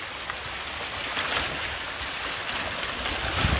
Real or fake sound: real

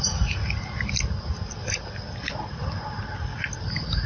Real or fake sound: real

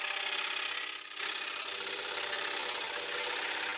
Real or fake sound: real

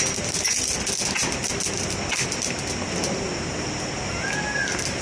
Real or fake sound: real